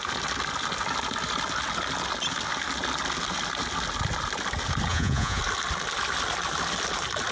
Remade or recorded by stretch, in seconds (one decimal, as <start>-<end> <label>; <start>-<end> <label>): 0.0-4.9 recorded; 4.9-5.4 remade; 5.4-7.3 recorded